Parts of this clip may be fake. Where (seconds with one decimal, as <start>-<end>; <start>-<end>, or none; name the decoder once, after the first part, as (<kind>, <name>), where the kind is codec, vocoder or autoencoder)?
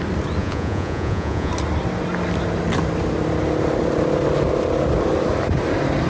0.4-1.5 (vocoder, Vocos)